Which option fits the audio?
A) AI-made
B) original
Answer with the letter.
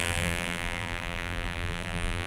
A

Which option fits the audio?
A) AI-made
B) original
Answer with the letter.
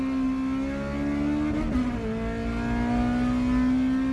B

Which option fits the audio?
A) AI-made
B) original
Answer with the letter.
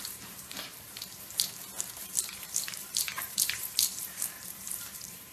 A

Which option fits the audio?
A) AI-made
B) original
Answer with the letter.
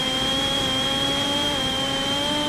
A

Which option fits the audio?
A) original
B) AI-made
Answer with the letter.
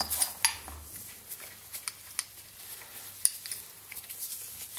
A